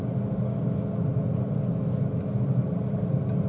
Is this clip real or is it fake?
real